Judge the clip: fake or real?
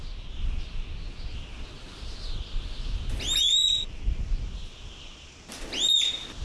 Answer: real